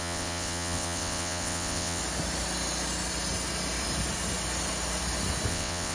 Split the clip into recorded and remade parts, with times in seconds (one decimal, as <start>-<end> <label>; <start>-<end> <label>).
0.0-2.0 remade; 2.0-5.5 recorded; 5.5-5.9 remade